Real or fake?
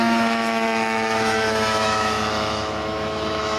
fake